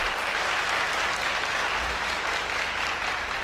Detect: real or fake real